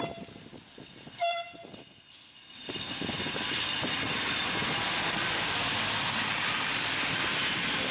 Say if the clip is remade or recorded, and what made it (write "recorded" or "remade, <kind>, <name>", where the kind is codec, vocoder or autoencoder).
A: recorded